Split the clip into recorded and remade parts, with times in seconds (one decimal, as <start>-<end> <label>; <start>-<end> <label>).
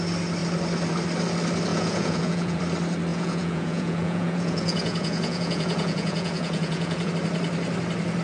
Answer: 0.0-1.7 recorded; 1.7-2.6 remade; 2.6-3.1 recorded; 3.1-7.1 remade; 7.1-8.2 recorded